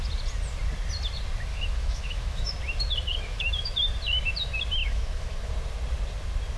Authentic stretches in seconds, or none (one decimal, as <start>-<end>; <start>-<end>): 0.0-1.5; 2.5-3.1; 3.8-4.8; 5.5-6.6